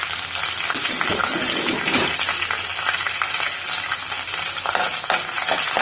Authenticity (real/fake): real